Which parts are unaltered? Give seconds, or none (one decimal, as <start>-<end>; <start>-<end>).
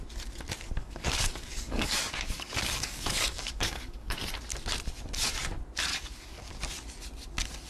0.0-0.8; 4.2-5.9; 6.5-7.7